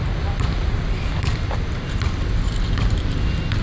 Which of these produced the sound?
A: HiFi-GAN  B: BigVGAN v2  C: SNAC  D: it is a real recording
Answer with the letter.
D